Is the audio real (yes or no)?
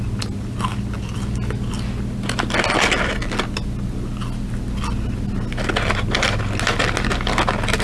yes